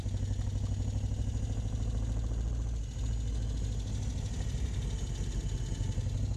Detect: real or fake real